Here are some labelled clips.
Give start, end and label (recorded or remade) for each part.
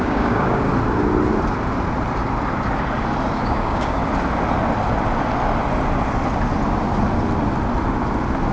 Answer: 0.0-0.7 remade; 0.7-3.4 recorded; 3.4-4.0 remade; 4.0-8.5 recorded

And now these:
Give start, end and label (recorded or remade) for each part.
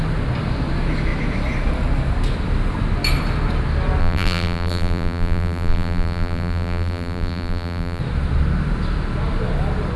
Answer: 0.0-4.0 recorded; 4.0-8.0 remade; 8.0-10.0 recorded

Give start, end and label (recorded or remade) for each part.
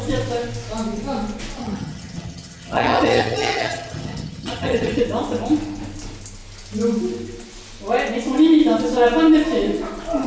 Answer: 0.0-1.6 recorded; 1.6-5.0 remade; 5.0-10.3 recorded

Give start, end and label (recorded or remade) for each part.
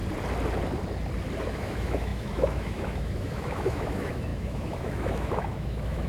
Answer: 0.0-1.5 recorded; 1.5-6.1 remade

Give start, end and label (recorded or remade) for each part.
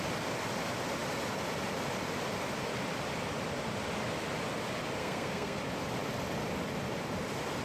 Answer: 0.0-5.0 recorded; 5.0-5.6 remade; 5.6-7.6 recorded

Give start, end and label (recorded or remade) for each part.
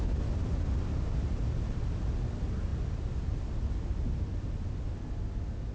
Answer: 0.0-5.7 recorded